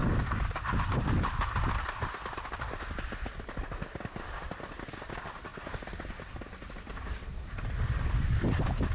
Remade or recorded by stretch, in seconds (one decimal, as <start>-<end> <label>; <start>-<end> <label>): 0.0-5.5 recorded; 5.5-7.7 remade; 7.7-8.9 recorded